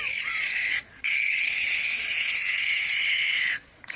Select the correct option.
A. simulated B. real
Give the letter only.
A